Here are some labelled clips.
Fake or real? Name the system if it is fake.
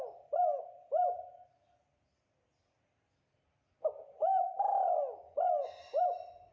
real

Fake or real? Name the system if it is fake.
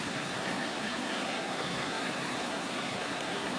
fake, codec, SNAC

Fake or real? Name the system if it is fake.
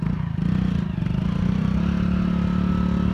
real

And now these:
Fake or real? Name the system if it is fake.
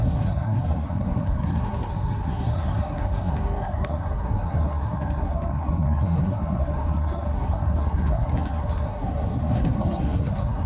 fake, codec, SNAC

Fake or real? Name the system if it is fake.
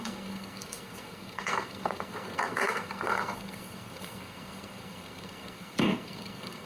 fake, codec, SNAC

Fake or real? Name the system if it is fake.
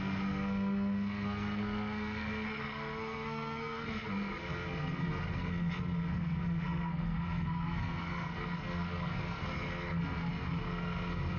fake, codec, SNAC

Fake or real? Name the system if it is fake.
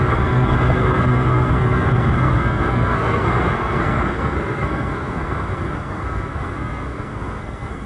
fake, codec, SNAC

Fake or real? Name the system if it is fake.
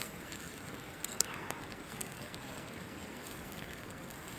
fake, codec, SNAC